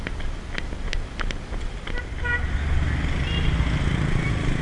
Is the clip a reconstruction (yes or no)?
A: no